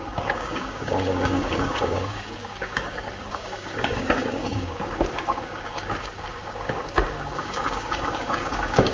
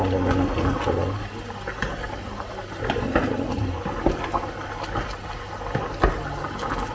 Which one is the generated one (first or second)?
first